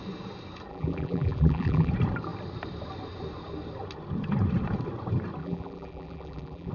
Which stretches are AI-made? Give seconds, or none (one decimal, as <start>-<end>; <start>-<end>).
0.7-1.9; 5.4-6.7